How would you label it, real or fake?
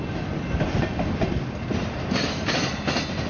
real